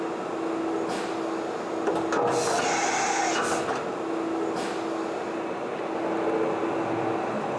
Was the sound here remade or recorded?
recorded